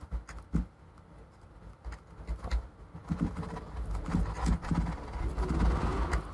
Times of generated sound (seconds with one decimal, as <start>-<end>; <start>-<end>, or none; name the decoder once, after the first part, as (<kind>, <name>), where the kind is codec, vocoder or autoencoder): none